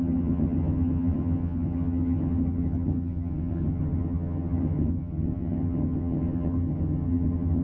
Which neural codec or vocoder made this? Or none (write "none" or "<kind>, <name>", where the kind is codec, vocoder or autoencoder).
vocoder, HiFi-GAN